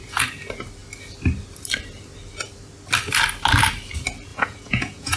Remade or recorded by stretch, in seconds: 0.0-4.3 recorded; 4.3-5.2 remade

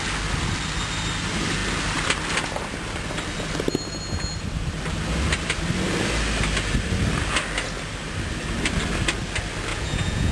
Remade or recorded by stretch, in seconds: 0.0-9.7 recorded; 9.7-10.3 remade

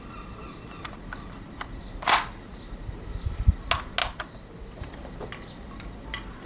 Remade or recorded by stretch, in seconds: 0.0-6.5 recorded